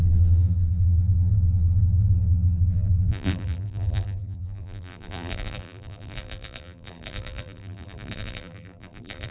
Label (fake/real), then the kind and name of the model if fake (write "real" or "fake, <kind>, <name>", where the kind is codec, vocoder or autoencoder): fake, vocoder, BigVGAN v2